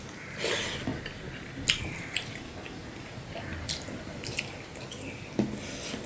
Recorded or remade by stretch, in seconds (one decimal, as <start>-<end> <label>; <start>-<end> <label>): 0.0-2.8 recorded; 2.8-4.8 remade; 4.8-6.1 recorded